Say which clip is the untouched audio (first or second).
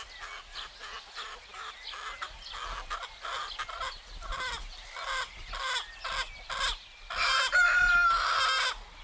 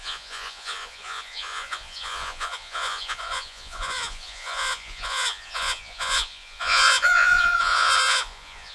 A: first